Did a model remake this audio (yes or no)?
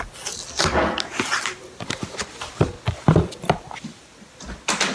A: no